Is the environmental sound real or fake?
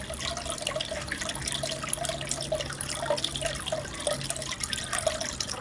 real